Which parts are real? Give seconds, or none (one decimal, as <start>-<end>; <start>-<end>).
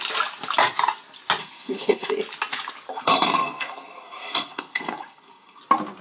0.0-1.4; 2.1-2.9; 5.6-6.0